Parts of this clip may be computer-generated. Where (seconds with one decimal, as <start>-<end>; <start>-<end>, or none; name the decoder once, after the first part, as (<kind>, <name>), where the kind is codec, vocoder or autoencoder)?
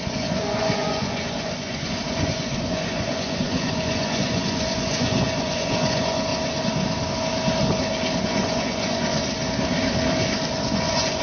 0.0-6.3 (vocoder, Vocos); 8.2-9.2; 10.7-11.2